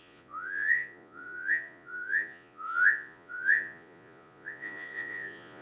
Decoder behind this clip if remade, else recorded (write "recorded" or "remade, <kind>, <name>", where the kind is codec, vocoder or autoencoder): remade, vocoder, Vocos